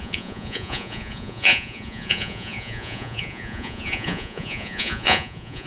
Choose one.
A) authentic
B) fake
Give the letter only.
B